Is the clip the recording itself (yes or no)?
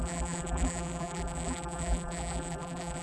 no